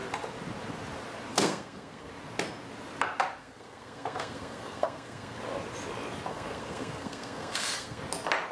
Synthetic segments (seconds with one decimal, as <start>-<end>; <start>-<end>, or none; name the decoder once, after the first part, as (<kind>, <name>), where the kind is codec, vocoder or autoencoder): 1.3-2.1 (codec, SNAC); 3.4-5.4; 6.3-8.0